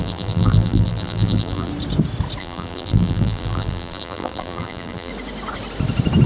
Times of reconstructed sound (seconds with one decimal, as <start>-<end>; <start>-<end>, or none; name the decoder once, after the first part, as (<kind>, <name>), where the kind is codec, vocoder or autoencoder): 0.0-1.7 (vocoder, BigVGAN v2); 2.4-5.1